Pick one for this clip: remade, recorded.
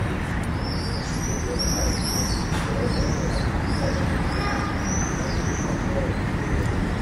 recorded